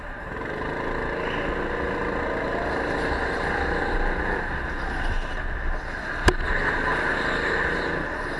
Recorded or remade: recorded